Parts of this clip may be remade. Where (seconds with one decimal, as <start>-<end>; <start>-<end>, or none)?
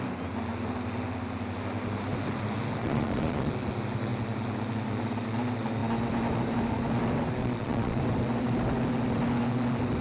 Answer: 2.8-3.5; 7.4-8.0